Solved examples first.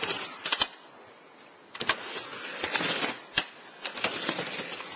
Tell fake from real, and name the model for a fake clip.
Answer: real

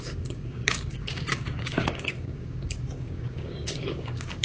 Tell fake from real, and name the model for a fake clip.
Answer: fake, codec, DAC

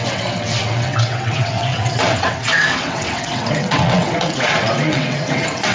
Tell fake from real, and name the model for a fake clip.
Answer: fake, vocoder, WaveNeXt